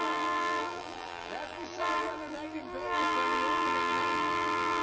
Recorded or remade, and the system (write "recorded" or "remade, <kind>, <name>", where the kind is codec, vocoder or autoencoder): remade, vocoder, BigVGAN v2